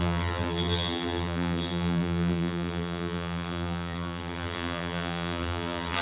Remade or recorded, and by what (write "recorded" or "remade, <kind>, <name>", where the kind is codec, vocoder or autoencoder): remade, vocoder, BigVGAN v2